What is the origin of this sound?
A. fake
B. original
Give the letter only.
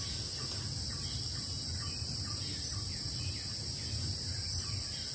B